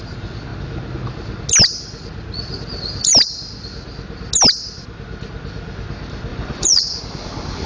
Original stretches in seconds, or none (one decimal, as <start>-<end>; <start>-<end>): 0.0-6.3; 7.0-7.7